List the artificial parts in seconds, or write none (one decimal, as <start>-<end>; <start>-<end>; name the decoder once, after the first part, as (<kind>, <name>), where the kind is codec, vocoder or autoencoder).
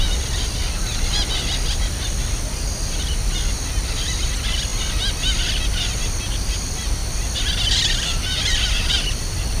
none